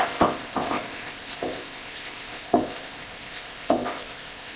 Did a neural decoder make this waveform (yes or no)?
yes